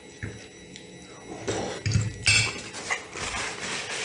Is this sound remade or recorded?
recorded